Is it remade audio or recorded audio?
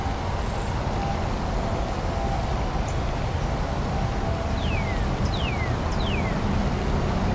recorded